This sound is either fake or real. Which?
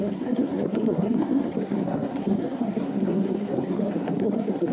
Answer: fake